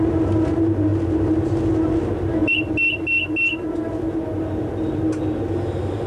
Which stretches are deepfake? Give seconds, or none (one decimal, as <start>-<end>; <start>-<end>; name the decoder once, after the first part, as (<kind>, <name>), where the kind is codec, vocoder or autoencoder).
none